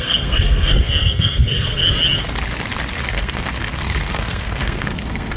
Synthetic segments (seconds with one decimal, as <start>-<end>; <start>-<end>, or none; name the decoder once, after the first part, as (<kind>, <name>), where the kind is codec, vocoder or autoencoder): 0.0-1.8 (codec, SNAC); 3.0-5.4